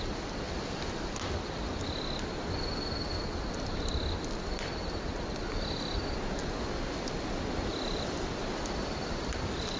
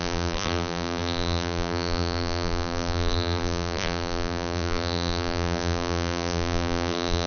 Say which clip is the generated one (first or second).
second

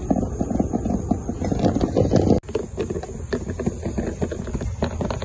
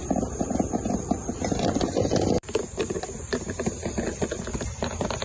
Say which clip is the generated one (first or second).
second